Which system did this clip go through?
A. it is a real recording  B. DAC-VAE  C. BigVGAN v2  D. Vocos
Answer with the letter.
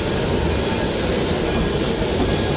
A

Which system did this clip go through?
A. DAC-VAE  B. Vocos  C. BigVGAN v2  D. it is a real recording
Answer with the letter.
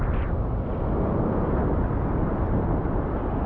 D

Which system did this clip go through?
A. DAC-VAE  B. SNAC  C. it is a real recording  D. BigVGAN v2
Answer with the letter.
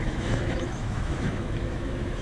A